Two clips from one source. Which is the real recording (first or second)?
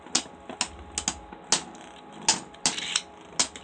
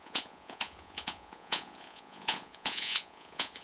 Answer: first